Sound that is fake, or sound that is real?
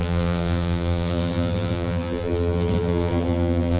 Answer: fake